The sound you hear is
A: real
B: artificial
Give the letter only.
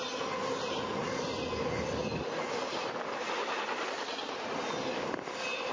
A